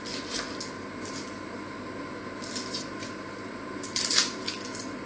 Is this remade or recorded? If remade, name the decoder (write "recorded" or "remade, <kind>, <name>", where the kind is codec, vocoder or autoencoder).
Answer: recorded